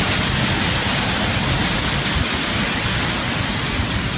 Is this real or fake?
real